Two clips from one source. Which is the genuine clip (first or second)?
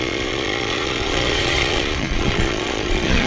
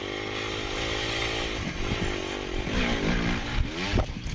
second